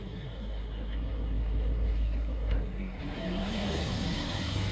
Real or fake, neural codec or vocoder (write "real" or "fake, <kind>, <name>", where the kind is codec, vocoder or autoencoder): fake, codec, SNAC